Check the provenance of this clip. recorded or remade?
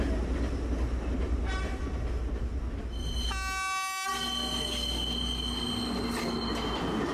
recorded